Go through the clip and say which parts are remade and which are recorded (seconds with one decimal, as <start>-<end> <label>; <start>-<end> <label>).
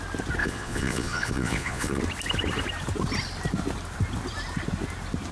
0.0-0.4 recorded; 0.4-2.0 remade; 2.0-5.3 recorded